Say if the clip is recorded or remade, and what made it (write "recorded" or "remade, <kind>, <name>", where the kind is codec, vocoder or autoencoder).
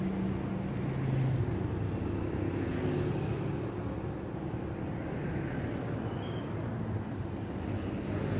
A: recorded